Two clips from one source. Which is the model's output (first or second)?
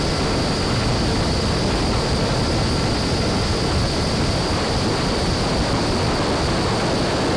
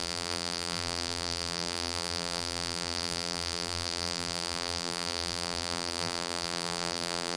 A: second